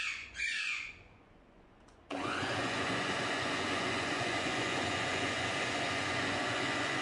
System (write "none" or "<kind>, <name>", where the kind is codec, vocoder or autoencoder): vocoder, Vocos